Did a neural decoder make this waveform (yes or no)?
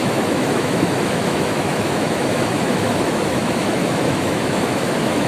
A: yes